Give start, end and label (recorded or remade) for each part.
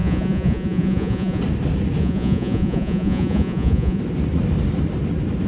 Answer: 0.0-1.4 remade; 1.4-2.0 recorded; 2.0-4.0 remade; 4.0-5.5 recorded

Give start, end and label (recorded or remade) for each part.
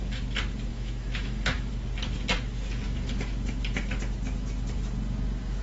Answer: 0.0-0.7 recorded; 0.7-1.7 remade; 1.7-5.6 recorded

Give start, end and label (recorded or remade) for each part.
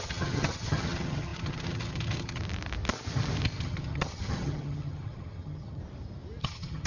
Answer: 0.0-2.4 remade; 2.4-3.6 recorded; 3.6-5.8 remade; 5.8-6.4 recorded; 6.4-6.9 remade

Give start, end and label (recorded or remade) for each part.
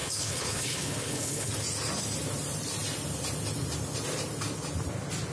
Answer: 0.0-1.5 remade; 1.5-5.3 recorded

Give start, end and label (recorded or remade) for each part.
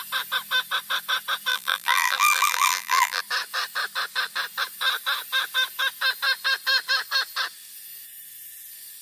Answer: 0.0-1.5 recorded; 1.5-3.2 remade; 3.2-9.0 recorded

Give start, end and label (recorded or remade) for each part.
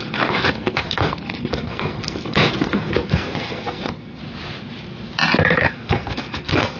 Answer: 0.0-4.2 remade; 4.2-5.5 recorded; 5.5-6.8 remade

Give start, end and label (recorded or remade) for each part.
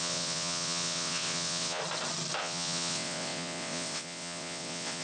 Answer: 0.0-1.8 remade; 1.8-2.4 recorded; 2.4-5.0 remade